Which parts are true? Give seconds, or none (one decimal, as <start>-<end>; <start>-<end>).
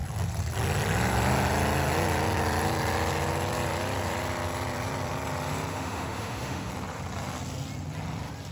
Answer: 0.0-5.7; 6.7-8.5